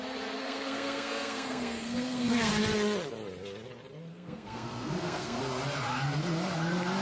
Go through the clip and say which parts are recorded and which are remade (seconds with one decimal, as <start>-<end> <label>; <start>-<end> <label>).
0.0-0.4 recorded; 0.4-2.5 remade; 2.5-4.1 recorded; 4.1-5.4 remade; 5.4-7.0 recorded